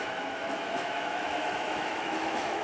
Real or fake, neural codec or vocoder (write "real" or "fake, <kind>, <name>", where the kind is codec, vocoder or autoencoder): fake, autoencoder, DAC-VAE